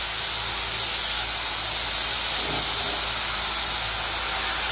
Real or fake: real